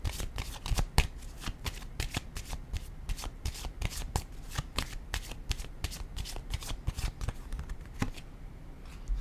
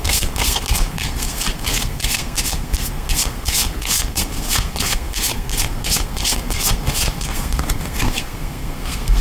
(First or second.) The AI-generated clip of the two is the second